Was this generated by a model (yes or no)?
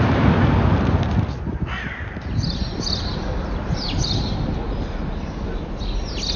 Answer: no